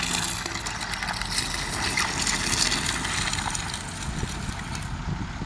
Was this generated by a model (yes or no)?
no